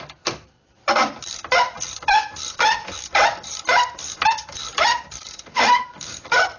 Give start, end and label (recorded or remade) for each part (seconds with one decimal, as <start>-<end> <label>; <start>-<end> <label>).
0.0-2.8 remade; 2.8-3.4 recorded; 3.4-6.6 remade